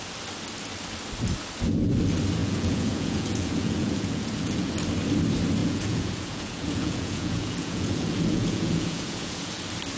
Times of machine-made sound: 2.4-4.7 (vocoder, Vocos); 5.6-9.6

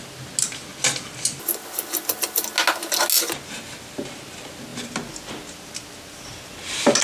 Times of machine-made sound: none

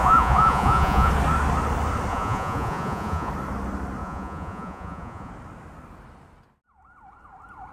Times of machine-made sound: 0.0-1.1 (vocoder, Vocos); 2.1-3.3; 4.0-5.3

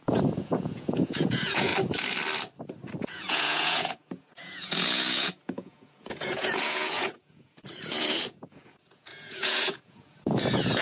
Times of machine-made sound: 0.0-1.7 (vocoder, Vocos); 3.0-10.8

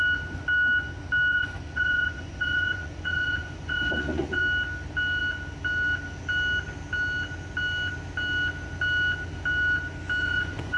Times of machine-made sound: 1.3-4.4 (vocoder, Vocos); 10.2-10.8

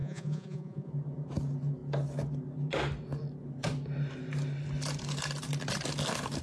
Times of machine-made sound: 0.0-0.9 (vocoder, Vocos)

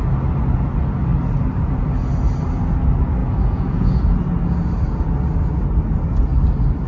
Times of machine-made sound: 3.2-4.0 (vocoder, Vocos)